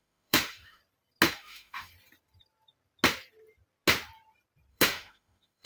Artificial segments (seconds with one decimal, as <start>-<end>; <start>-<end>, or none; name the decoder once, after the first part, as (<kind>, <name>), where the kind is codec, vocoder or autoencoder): 0.0-0.8 (autoencoder, DAC-VAE); 1.3-1.9; 4.7-5.7